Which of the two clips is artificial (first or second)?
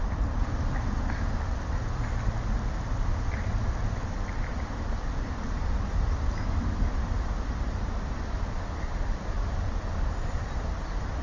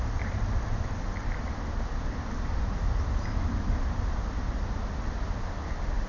first